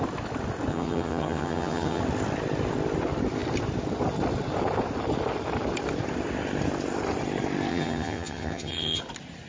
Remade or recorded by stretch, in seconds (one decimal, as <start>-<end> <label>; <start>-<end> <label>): 0.0-0.7 recorded; 0.7-2.0 remade; 2.0-7.7 recorded; 7.7-9.0 remade; 9.0-9.5 recorded